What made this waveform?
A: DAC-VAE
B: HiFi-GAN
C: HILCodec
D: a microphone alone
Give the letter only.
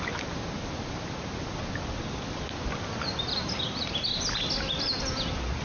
D